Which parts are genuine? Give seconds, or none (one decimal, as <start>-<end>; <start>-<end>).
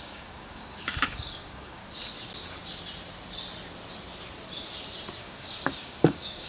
1.8-5.2